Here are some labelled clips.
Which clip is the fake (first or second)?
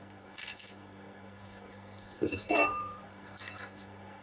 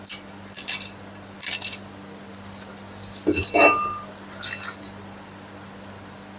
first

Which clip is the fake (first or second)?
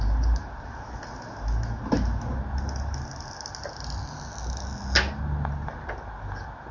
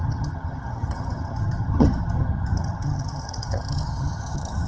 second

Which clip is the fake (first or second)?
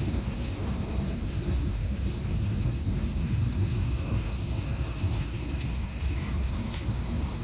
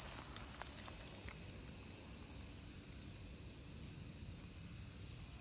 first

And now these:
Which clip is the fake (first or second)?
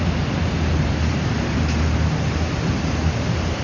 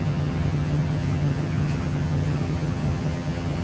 second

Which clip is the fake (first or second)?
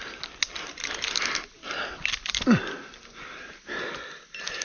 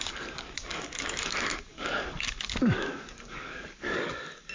second